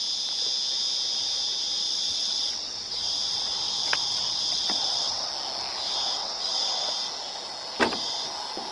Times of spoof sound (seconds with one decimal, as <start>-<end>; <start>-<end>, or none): 1.8-5.3; 6.2-6.9